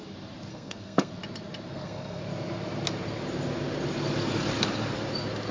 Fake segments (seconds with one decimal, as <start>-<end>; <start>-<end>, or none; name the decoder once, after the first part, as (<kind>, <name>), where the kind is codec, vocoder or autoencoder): 0.5-1.1 (codec, SNAC); 1.7-2.2